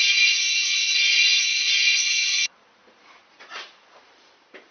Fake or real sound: fake